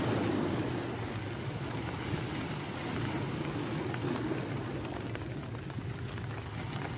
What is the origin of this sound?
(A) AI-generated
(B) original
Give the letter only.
B